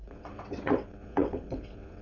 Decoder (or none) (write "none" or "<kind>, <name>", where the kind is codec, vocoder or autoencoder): vocoder, WaveNeXt